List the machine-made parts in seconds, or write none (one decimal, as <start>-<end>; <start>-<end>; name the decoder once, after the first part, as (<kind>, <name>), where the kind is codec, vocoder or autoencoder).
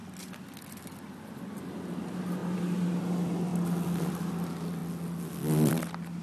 0.8-3.5 (vocoder, BigVGAN v2); 4.1-4.8; 5.7-6.2